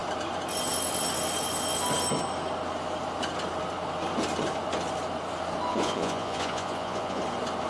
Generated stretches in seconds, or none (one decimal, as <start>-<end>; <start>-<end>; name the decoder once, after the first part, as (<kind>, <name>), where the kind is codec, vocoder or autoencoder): 5.7-7.2 (vocoder, Vocos)